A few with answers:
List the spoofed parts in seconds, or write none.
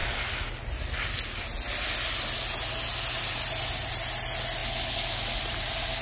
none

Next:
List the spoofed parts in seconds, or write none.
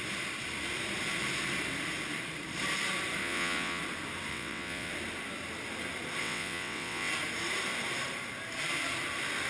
3.2-3.8 (vocoder, WaveNeXt); 4.3-4.9; 6.2-7.1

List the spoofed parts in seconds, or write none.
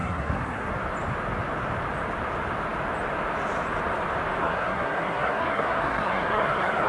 0.0-0.7 (codec, SNAC); 4.4-6.9